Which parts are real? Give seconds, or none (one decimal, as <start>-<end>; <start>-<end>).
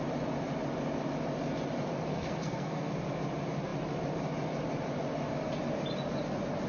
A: 0.0-2.1; 2.9-6.7